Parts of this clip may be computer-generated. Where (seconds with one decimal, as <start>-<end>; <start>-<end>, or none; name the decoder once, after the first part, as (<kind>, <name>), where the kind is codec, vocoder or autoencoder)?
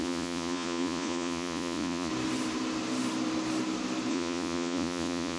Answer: 0.0-2.1 (vocoder, Vocos); 4.1-5.4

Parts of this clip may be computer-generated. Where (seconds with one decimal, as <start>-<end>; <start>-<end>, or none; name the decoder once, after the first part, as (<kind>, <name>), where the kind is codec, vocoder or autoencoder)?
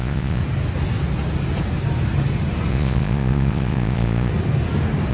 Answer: 0.0-0.4 (vocoder, Vocos); 2.7-4.3